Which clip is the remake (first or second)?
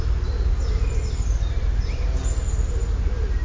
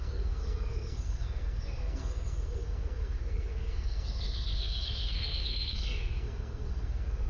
second